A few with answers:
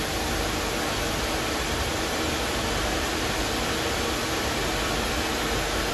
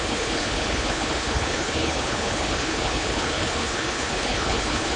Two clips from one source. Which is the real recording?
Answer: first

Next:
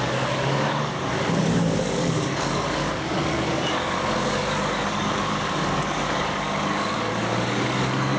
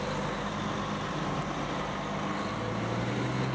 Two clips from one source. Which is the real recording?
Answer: second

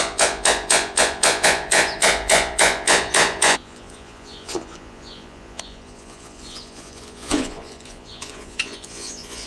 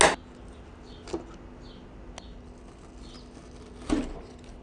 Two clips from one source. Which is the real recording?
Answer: second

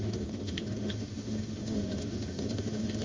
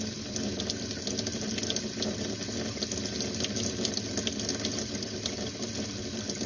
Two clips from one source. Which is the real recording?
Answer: second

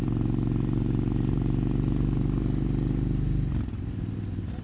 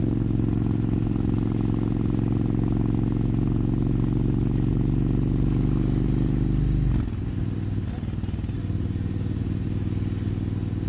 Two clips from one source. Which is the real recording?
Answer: second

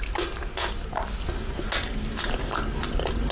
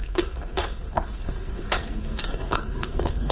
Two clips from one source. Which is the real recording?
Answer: first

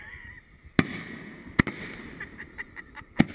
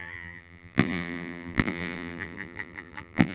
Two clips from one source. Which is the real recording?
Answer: first